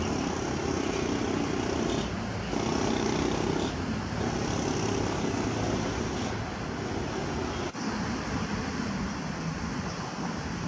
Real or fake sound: real